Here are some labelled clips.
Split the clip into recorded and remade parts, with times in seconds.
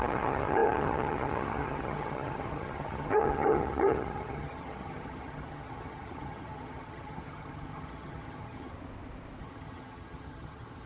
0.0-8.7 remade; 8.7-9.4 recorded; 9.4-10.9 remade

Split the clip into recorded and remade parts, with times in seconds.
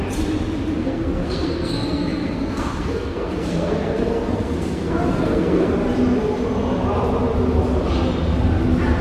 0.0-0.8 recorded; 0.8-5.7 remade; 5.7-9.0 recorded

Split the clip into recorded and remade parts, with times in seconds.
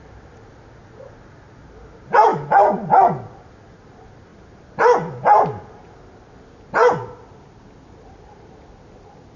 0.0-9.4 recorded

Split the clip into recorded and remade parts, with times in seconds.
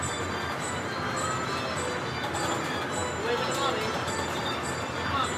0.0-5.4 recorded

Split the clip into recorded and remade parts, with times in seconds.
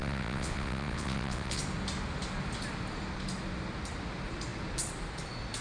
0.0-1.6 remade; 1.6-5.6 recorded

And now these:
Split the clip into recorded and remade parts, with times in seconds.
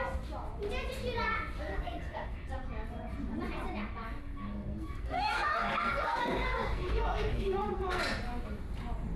0.0-1.7 recorded; 1.7-2.5 remade; 2.5-4.2 recorded; 4.2-8.0 remade; 8.0-9.2 recorded